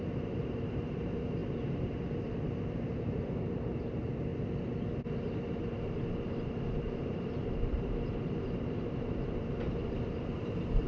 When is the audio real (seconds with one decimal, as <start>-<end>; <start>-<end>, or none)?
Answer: 4.3-6.8